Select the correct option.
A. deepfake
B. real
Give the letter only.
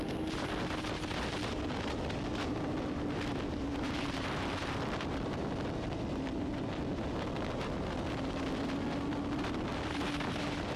B